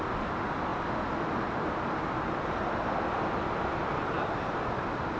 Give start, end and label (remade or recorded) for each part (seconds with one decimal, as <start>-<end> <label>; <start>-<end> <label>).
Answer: 0.0-5.2 recorded